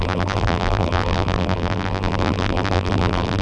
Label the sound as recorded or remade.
remade